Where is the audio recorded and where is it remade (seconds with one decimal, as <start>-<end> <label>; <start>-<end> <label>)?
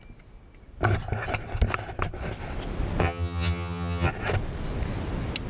0.0-3.0 recorded; 3.0-4.1 remade; 4.1-5.5 recorded